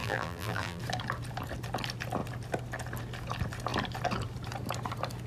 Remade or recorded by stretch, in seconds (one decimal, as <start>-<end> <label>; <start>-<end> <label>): 0.0-0.8 remade; 0.8-5.3 recorded